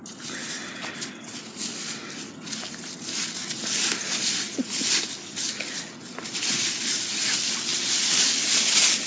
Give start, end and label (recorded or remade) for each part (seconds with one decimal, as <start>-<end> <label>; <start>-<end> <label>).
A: 0.0-4.0 recorded; 4.0-4.8 remade; 4.8-9.1 recorded